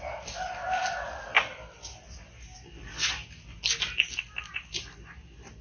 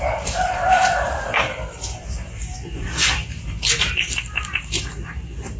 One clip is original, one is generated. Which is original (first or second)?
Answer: first